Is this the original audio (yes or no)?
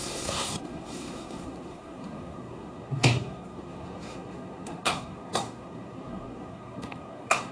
no